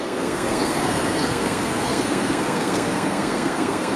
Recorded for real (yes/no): no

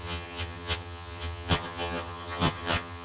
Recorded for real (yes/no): no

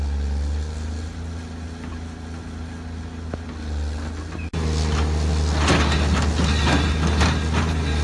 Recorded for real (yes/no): yes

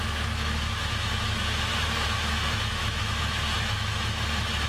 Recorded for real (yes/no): no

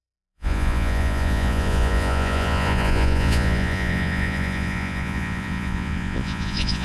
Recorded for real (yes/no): no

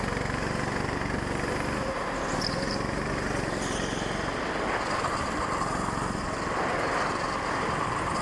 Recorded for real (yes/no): yes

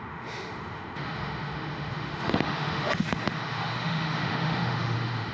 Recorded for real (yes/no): no